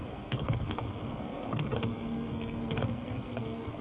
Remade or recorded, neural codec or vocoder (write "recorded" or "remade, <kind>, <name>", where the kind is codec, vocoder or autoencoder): remade, codec, SNAC